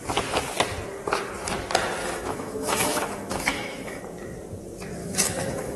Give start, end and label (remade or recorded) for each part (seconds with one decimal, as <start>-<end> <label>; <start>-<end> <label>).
0.0-2.0 recorded; 2.0-4.0 remade; 4.0-5.0 recorded; 5.0-5.8 remade